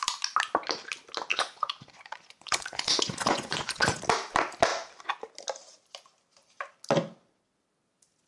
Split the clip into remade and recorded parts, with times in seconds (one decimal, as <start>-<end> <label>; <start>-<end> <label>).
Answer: 0.0-1.3 recorded; 1.3-4.0 remade; 4.0-8.3 recorded